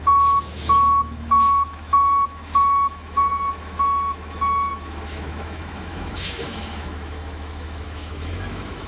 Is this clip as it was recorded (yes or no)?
no